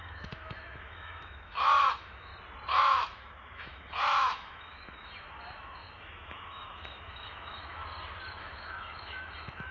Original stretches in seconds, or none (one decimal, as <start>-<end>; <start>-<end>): 2.3-2.8; 7.8-8.4